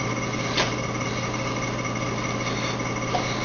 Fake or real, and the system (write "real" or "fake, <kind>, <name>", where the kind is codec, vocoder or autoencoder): real